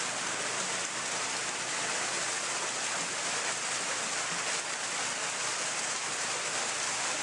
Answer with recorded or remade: recorded